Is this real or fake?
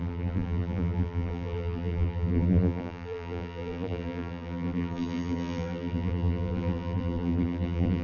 fake